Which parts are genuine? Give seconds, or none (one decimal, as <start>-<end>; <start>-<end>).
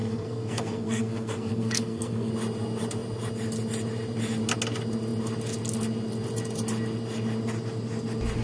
2.3-8.4